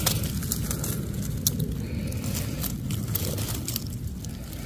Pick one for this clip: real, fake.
real